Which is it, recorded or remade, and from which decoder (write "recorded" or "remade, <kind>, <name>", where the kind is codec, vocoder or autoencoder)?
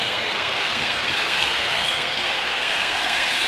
remade, codec, SNAC